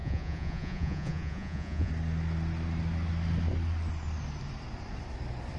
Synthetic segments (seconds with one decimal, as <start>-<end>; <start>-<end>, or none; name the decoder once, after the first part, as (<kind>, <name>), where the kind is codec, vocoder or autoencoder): 0.0-1.9 (vocoder, Vocos)